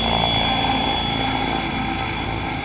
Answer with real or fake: real